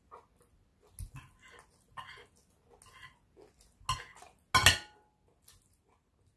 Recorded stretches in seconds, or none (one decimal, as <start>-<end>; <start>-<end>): 0.0-6.4